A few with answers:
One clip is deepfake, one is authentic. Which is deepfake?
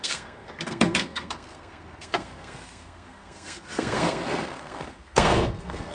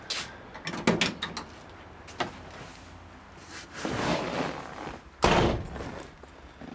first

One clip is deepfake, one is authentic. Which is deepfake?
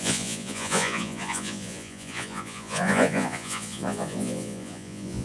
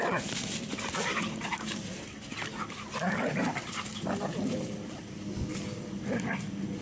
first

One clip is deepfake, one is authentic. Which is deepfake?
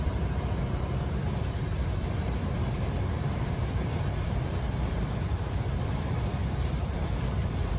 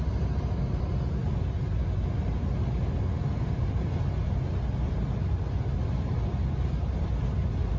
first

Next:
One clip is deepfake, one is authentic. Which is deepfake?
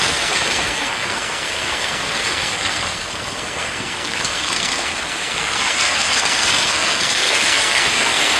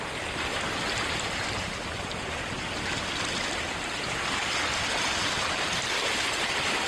first